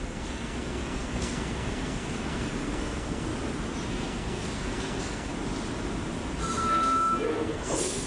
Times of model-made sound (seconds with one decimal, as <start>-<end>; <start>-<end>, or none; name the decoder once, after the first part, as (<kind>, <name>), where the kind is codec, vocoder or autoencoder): 0.0-3.3 (codec, SNAC); 3.9-5.3; 6.4-8.1